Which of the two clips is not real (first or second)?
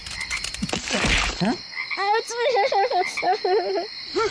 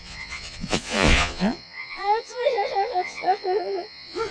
second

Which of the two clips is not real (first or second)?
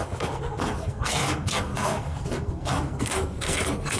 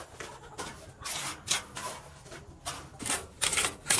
first